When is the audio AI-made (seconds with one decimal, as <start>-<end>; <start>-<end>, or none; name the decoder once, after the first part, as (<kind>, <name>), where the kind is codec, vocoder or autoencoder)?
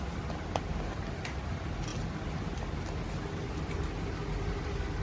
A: none